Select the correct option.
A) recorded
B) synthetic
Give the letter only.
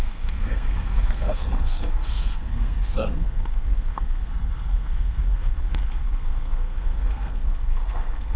B